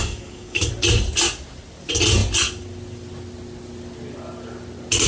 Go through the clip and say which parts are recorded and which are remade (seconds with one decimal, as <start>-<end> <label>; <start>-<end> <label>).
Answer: 0.0-0.7 remade; 0.7-5.1 recorded